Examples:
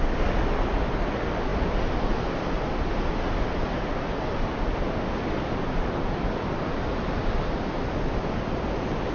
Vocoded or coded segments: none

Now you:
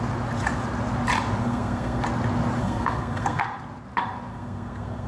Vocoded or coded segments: 1.4-2.0 (codec, SNAC); 2.6-3.4; 4.3-5.1